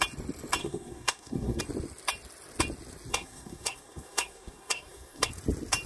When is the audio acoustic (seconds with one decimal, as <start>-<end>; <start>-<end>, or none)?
0.0-0.6; 1.6-3.1; 5.3-5.9